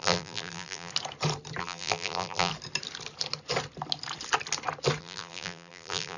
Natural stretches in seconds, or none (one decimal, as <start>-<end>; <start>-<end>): 0.9-1.6; 2.5-5.0